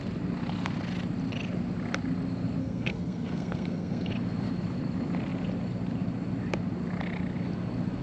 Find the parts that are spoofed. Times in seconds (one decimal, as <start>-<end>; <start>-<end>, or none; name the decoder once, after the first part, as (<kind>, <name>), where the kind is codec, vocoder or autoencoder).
2.6-4.1 (codec, SNAC)